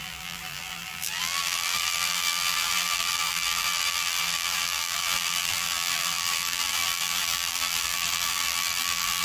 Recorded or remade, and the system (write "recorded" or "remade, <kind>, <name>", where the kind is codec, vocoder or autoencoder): remade, vocoder, BigVGAN v2